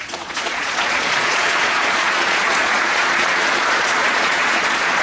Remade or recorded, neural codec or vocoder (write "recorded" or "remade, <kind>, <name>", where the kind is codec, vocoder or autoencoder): remade, vocoder, Vocos